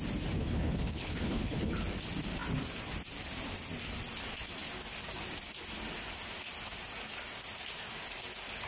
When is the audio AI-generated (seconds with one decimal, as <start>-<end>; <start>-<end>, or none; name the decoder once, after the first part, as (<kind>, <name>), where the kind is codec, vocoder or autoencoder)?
0.4-1.7 (codec, HILCodec)